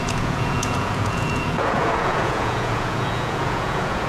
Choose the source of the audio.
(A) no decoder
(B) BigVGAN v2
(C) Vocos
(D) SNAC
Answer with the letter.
C